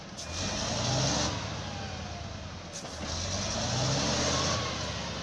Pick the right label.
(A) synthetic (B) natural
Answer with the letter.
B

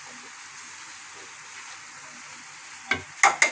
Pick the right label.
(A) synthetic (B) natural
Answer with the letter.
B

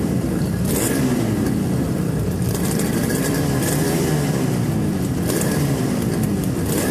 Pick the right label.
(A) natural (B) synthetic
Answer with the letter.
B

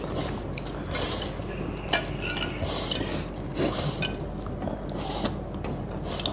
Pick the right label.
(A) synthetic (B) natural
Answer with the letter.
B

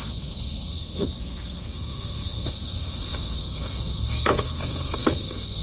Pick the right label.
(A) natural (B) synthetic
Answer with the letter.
B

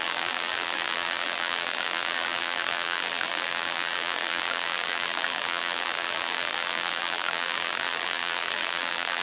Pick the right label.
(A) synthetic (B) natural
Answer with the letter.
A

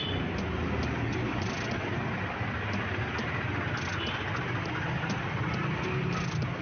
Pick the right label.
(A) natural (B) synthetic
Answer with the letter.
A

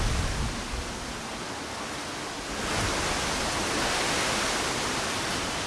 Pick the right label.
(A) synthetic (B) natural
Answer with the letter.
B